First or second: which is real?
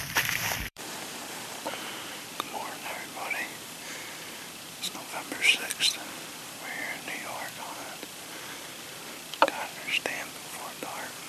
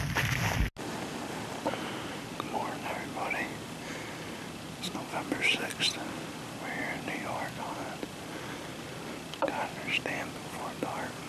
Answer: second